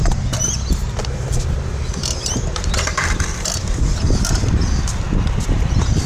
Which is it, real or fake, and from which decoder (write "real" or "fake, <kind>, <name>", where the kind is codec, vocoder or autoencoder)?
fake, vocoder, BigVGAN v2